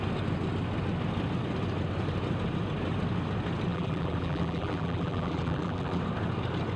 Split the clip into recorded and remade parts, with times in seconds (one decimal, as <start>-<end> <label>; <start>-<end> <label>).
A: 0.0-3.7 recorded; 3.7-6.0 remade; 6.0-6.8 recorded